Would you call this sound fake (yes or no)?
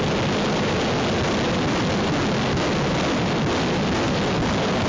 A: no